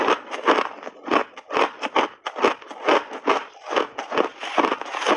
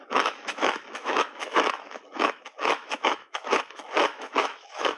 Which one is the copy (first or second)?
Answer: second